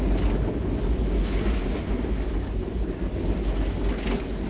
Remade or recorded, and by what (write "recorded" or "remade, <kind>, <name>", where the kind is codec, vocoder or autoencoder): recorded